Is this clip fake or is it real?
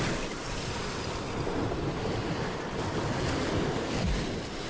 real